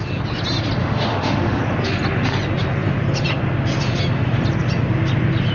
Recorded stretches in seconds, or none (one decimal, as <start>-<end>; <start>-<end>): 0.0-0.8; 1.6-5.5